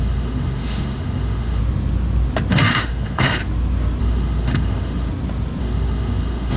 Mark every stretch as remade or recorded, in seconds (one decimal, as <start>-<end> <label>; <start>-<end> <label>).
0.0-1.6 remade; 1.6-2.5 recorded; 2.5-3.4 remade; 3.4-4.0 recorded; 4.0-5.1 remade; 5.1-5.6 recorded; 5.6-6.6 remade